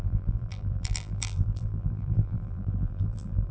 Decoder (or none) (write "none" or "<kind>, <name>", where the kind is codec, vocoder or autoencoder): vocoder, BigVGAN v2